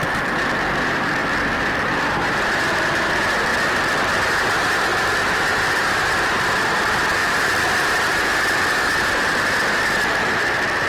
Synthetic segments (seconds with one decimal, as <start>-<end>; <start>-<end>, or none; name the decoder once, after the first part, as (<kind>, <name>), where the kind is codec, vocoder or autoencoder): 0.0-3.5 (vocoder, BigVGAN v2); 4.0-10.9

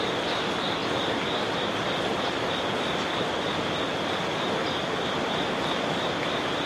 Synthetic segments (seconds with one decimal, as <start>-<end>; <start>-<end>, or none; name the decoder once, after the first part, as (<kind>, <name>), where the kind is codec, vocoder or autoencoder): none